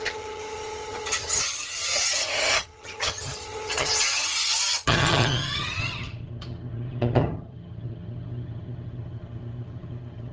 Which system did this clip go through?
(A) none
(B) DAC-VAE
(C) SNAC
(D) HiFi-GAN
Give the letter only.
D